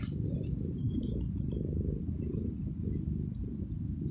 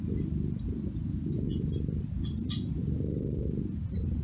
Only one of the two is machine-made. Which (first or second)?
first